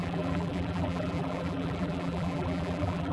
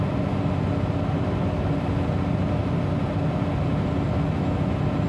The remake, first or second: first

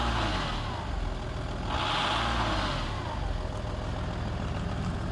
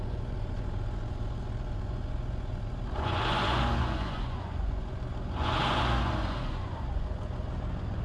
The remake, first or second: second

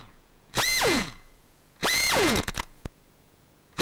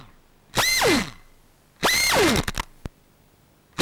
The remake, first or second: first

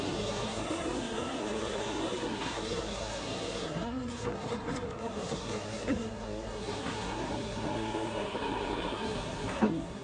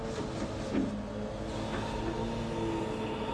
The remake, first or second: first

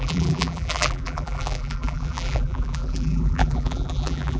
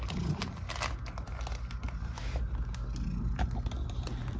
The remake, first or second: first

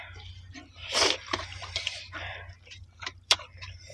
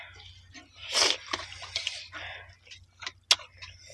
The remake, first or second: first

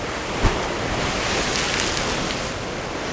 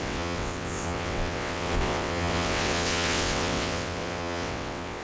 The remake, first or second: second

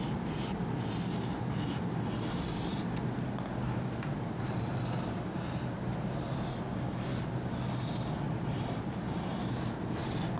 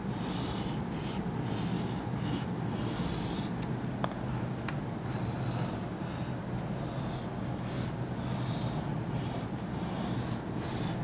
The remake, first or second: first